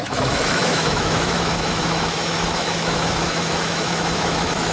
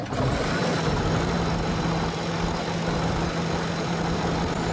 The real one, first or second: second